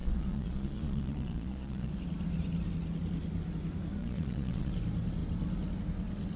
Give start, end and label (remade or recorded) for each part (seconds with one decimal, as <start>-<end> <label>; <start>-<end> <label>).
0.0-1.9 remade; 1.9-4.0 recorded; 4.0-4.7 remade; 4.7-6.4 recorded